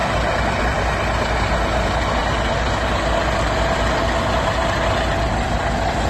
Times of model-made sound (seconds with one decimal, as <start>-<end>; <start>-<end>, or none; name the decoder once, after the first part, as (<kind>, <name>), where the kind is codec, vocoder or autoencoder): none